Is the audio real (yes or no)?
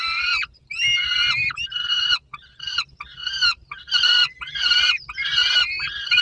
no